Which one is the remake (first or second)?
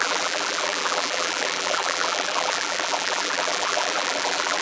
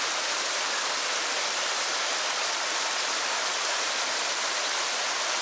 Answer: first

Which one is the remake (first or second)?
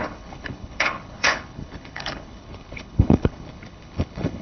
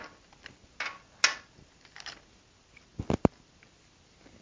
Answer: first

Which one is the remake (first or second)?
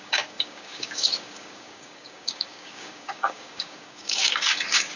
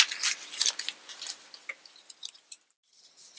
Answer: first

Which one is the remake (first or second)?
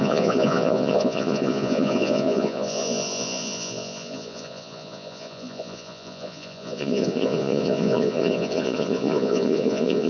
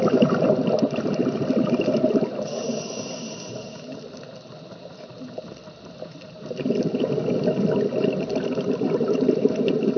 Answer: first